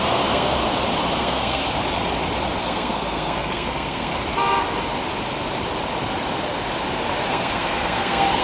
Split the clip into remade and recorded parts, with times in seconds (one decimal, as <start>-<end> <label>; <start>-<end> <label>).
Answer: 0.0-0.6 remade; 0.6-1.2 recorded; 1.2-1.6 remade; 1.6-2.6 recorded; 2.6-4.1 remade; 4.1-7.3 recorded; 7.3-8.4 remade